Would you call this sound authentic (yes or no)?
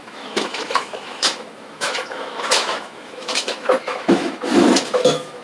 no